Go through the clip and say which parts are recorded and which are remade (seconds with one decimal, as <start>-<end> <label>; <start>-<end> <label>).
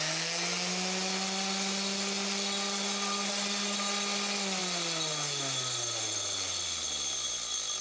0.0-7.8 recorded